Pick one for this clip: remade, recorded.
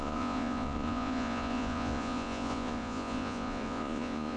remade